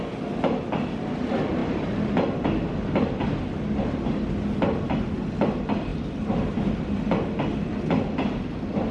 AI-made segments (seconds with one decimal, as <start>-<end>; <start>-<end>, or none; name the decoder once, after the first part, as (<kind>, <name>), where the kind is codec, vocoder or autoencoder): 5.9-7.0 (vocoder, BigVGAN v2)